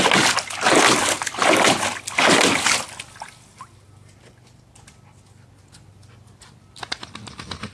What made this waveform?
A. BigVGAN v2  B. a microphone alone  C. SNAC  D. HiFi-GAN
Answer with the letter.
B